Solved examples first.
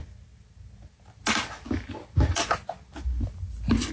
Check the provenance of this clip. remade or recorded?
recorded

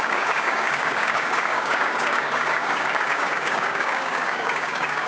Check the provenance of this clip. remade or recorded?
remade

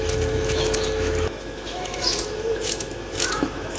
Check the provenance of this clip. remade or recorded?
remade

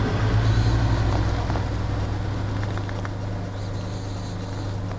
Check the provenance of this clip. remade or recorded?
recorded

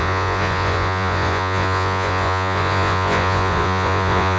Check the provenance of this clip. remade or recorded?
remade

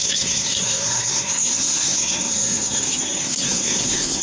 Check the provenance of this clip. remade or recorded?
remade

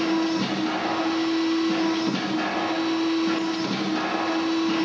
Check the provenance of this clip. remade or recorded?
recorded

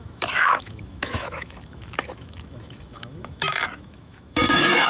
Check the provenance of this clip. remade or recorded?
remade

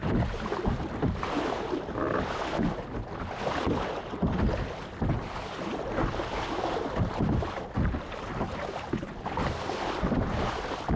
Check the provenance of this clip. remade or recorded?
recorded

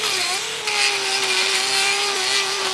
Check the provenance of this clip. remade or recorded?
remade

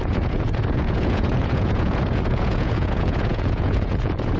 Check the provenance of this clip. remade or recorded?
remade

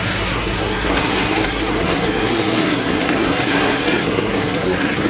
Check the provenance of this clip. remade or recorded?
remade